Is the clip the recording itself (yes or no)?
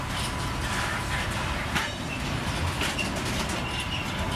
yes